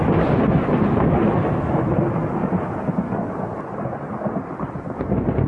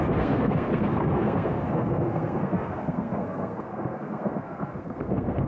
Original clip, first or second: first